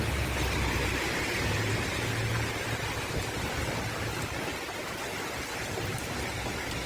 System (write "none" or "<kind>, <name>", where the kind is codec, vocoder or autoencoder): none